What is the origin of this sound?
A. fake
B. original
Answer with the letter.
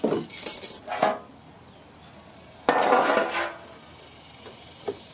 B